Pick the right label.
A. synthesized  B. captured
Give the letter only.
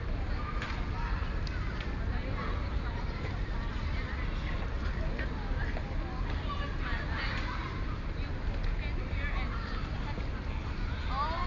B